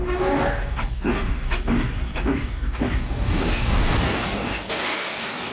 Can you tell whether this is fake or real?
fake